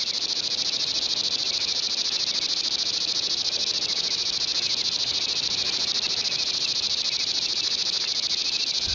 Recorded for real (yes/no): yes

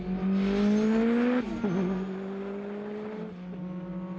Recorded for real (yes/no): yes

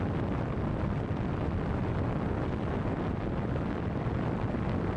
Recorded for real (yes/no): yes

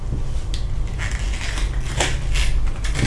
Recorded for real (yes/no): yes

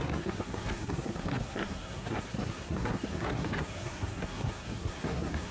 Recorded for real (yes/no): no